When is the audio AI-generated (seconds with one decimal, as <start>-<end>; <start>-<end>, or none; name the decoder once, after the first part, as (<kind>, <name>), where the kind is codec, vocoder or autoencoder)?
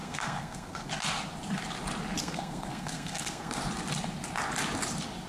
0.0-0.9 (codec, SNAC); 2.2-3.6